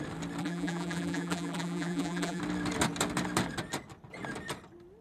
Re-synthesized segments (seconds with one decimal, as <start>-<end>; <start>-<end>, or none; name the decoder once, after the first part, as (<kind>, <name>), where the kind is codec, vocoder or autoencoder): 0.4-2.4 (vocoder, BigVGAN v2)